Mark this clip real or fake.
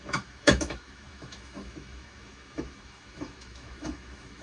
fake